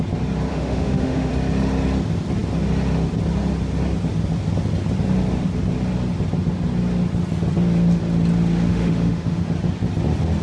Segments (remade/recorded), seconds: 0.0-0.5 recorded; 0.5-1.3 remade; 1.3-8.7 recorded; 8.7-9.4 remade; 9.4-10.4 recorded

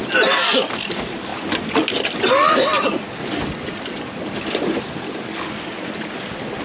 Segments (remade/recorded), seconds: 0.0-6.6 recorded